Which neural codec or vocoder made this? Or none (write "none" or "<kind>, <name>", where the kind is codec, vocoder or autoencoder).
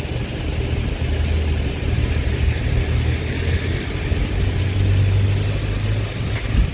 none